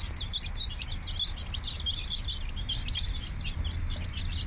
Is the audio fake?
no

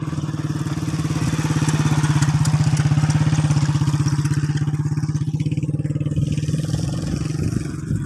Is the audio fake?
no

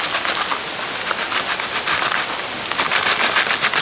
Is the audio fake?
no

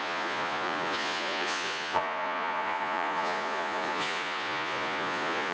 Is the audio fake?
yes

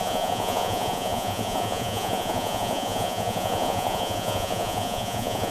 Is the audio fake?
yes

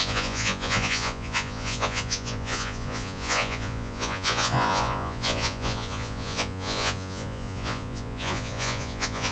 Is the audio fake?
yes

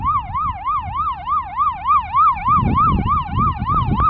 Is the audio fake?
no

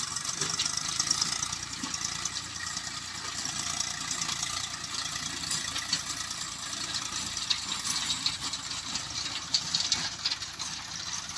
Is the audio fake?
no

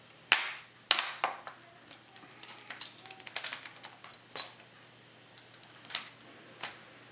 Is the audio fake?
no